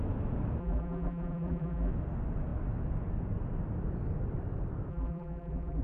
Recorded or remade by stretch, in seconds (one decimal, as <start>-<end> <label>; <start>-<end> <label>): 0.0-0.6 recorded; 0.6-1.9 remade; 1.9-4.9 recorded; 4.9-5.8 remade